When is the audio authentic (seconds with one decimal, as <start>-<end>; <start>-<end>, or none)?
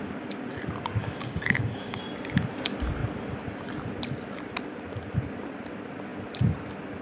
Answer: 0.0-1.0; 2.0-7.0